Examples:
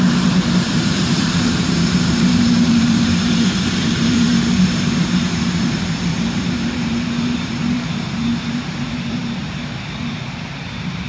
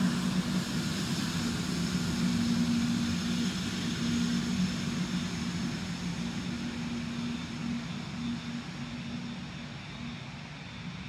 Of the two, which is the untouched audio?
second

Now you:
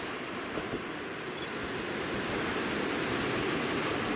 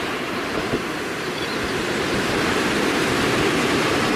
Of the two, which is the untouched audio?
first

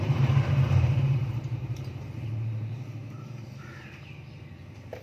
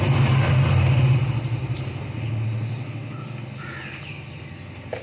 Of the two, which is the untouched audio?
second